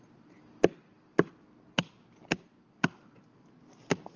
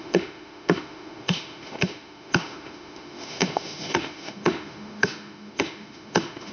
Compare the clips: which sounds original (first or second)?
first